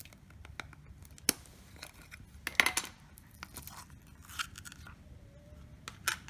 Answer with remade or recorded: recorded